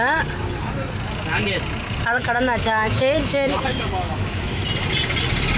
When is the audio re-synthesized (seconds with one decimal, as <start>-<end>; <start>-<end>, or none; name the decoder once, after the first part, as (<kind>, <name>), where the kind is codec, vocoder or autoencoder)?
2.2-4.6 (autoencoder, DAC-VAE)